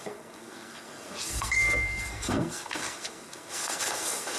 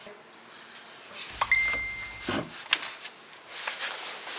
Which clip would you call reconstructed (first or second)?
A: first